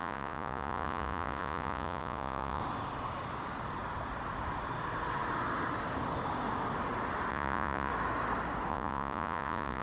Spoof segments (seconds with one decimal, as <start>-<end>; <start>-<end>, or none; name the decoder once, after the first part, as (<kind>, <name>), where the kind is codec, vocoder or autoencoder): 0.0-2.6 (vocoder, Vocos); 7.3-7.9; 8.7-9.8